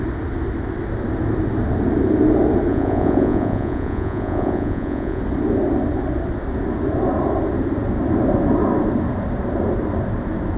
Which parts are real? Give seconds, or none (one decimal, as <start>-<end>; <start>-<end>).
0.0-2.7; 5.2-10.6